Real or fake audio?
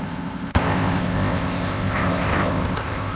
fake